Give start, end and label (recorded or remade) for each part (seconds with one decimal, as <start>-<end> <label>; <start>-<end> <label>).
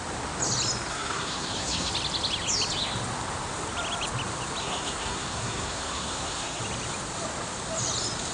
0.0-0.9 recorded; 0.9-1.9 remade; 1.9-4.6 recorded; 4.6-6.6 remade; 6.6-8.3 recorded